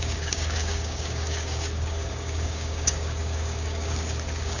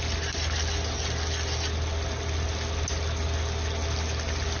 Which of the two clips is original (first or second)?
second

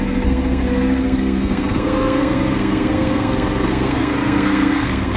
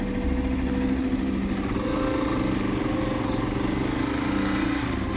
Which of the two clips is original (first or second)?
second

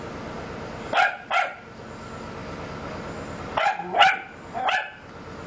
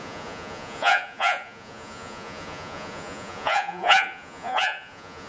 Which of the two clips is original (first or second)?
first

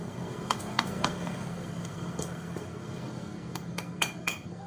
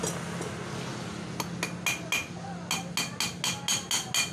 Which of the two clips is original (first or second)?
second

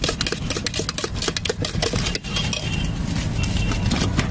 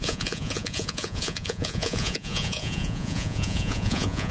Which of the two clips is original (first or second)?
first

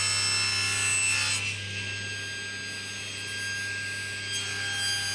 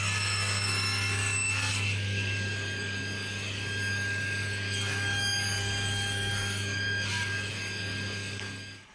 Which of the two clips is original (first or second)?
first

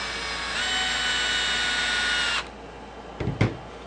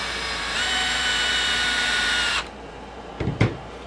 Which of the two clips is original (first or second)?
first